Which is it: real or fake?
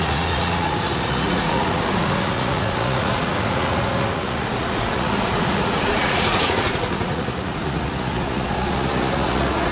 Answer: fake